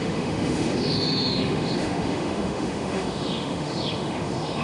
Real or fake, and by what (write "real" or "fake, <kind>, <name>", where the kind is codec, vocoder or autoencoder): fake, autoencoder, DAC-VAE